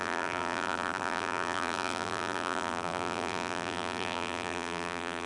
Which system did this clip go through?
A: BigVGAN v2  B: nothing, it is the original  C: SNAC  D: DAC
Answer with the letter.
A